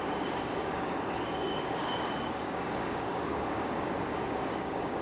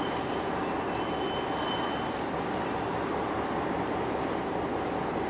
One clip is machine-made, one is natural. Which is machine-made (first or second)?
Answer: first